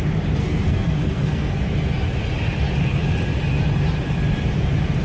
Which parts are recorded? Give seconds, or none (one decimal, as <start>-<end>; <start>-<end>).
0.0-0.4; 1.6-5.0